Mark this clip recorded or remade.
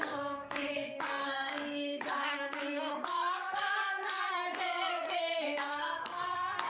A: remade